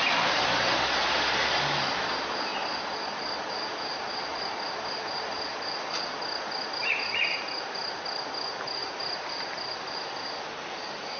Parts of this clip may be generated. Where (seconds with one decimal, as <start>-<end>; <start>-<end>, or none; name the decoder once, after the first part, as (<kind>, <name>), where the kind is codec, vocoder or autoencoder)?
6.8-7.4 (vocoder, BigVGAN v2); 8.8-10.1